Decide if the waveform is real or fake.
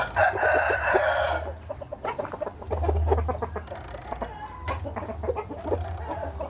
real